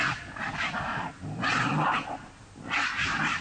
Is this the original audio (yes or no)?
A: yes